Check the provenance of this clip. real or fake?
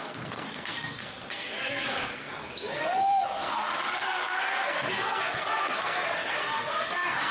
fake